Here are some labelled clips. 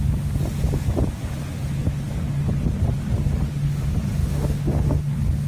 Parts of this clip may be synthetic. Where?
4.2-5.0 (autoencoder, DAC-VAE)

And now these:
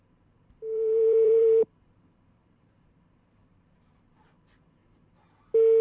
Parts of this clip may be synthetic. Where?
0.0-4.8 (vocoder, BigVGAN v2)

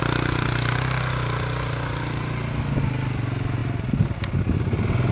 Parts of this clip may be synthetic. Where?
none

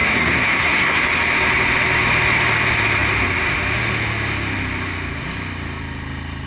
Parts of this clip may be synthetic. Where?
0.0-1.0 (codec, SNAC)

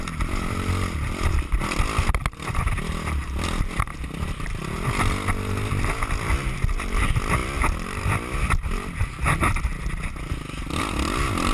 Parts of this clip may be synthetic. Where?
none

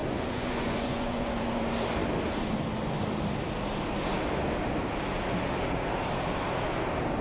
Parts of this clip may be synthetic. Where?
0.0-1.6 (vocoder, Vocos)